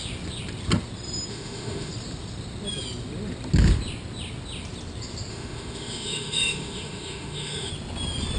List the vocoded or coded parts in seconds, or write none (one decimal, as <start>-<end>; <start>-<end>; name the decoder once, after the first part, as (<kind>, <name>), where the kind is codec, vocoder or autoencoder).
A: 1.3-1.9 (autoencoder, DAC-VAE); 5.3-7.7